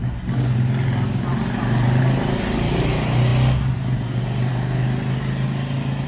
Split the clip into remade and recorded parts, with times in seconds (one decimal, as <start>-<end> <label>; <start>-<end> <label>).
0.0-6.1 recorded